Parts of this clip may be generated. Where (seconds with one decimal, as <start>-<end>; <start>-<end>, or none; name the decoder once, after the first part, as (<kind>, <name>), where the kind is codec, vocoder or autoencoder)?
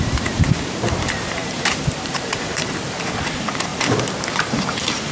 0.0-3.7 (vocoder, BigVGAN v2); 4.3-5.1